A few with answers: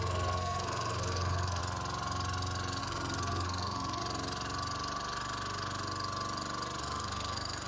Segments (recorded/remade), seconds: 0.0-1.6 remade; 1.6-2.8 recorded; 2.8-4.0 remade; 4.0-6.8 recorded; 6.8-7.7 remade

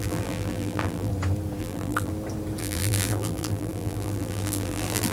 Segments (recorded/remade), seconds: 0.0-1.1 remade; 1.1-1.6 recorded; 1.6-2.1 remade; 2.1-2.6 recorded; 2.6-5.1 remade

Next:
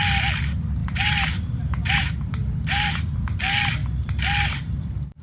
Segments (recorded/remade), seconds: 0.0-0.8 recorded; 0.8-2.9 remade; 2.9-5.2 recorded